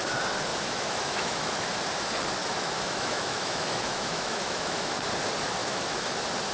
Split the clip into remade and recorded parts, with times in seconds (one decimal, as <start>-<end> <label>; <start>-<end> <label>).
0.0-0.5 recorded; 0.5-1.7 remade; 1.7-2.4 recorded; 2.4-5.0 remade; 5.0-5.6 recorded; 5.6-6.1 remade; 6.1-6.5 recorded